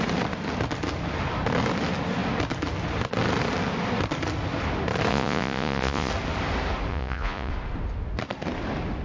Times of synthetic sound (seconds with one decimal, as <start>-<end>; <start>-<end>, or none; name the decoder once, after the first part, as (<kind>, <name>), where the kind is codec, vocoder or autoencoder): 5.1-6.1 (vocoder, Vocos); 6.9-7.5